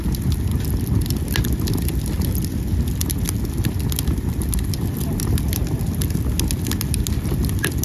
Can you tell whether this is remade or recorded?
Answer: recorded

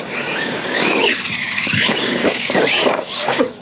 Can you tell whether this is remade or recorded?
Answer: remade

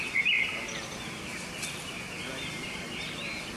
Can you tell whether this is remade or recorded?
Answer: recorded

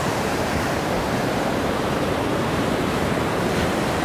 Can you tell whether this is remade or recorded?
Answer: remade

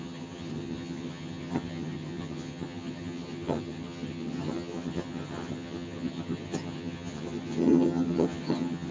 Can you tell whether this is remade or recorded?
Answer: remade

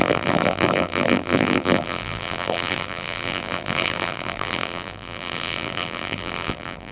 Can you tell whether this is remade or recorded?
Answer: remade